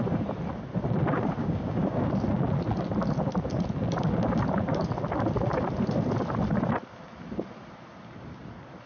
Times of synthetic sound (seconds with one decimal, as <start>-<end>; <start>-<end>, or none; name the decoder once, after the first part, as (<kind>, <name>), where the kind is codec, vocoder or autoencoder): 1.4-2.1 (codec, DAC)